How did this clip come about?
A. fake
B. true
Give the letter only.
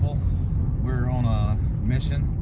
B